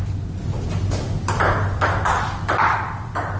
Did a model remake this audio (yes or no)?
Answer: no